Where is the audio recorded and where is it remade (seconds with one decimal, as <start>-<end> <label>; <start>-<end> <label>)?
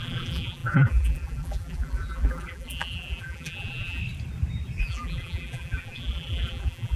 0.0-4.0 remade; 4.0-4.8 recorded; 4.8-7.0 remade